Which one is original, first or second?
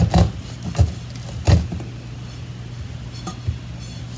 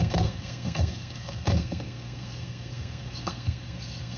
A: first